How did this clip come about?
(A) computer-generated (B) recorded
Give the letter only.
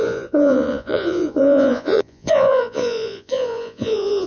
A